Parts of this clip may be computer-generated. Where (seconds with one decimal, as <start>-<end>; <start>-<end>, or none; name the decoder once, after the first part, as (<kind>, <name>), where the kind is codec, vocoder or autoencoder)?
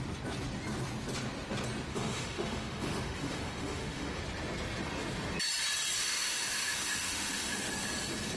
1.9-4.2 (autoencoder, DAC-VAE); 6.0-7.7